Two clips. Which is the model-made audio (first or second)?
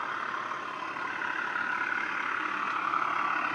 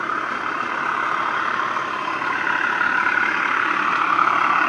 second